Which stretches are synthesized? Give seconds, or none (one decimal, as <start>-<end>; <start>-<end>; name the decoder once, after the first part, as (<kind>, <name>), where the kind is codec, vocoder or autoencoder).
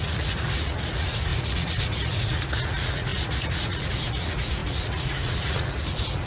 0.0-6.3 (vocoder, Vocos)